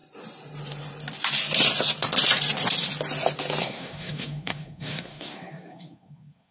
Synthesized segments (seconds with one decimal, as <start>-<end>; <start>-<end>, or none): 3.6-6.5